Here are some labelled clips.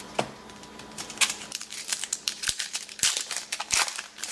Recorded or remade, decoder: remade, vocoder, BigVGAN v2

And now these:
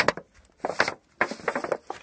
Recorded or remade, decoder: recorded